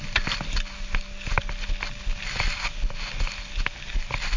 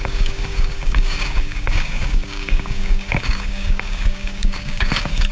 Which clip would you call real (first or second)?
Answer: first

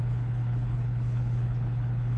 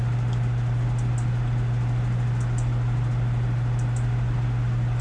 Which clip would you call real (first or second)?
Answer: second